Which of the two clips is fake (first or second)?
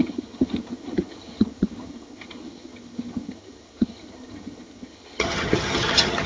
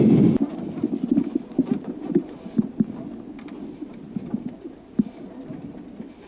first